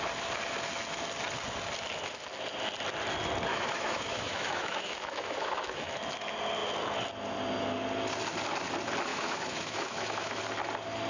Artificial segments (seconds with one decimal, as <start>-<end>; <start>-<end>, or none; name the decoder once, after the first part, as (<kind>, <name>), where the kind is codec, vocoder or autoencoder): 3.5-6.0 (autoencoder, DAC-VAE); 9.1-10.4